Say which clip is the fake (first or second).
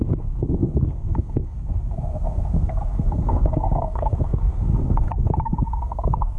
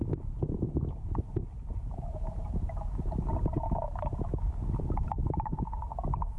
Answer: first